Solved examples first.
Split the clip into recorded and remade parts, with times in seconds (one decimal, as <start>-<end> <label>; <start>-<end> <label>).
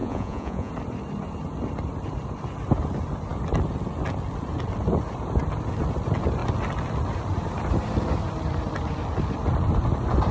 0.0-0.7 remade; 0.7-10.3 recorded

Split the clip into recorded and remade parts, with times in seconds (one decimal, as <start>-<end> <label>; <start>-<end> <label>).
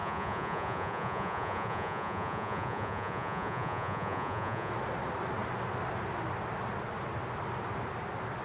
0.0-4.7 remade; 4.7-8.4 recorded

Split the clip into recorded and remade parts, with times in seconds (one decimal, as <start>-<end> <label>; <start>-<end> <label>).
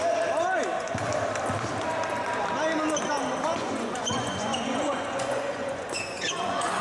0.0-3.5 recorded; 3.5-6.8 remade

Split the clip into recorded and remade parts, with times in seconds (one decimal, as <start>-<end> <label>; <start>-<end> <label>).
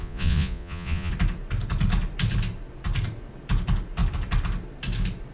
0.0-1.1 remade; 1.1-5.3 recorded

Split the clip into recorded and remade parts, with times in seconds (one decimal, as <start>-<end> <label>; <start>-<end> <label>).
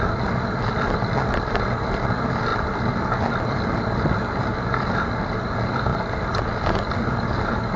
0.0-7.8 recorded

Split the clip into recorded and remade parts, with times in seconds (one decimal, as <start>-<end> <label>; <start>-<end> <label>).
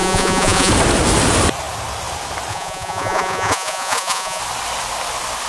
0.0-0.7 remade; 0.7-2.5 recorded; 2.5-4.4 remade; 4.4-5.5 recorded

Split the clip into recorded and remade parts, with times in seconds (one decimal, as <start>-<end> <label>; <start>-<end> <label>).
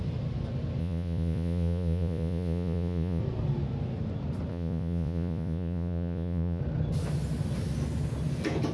0.0-0.8 recorded; 0.8-3.2 remade; 3.2-4.5 recorded; 4.5-6.6 remade; 6.6-8.7 recorded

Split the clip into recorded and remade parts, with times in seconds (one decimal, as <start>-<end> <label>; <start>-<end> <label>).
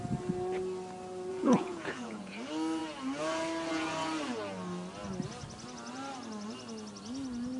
0.0-1.3 recorded; 1.3-2.3 remade; 2.3-7.6 recorded